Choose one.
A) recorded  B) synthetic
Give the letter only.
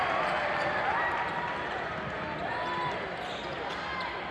A